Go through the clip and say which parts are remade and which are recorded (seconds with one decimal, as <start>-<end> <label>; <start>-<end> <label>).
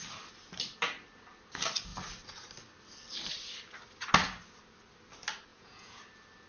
0.0-5.5 recorded; 5.5-6.0 remade; 6.0-6.5 recorded